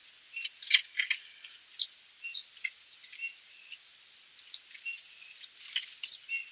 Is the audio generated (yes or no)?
no